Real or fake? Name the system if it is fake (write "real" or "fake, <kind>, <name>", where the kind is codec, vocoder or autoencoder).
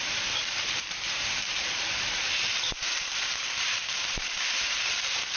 fake, vocoder, BigVGAN v2